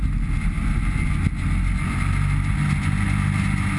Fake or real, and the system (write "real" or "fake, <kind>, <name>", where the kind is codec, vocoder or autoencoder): real